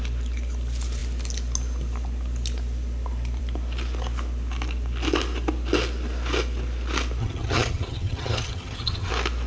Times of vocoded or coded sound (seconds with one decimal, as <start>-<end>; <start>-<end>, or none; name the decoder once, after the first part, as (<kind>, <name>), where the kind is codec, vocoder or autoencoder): 7.2-9.1 (vocoder, HiFi-GAN)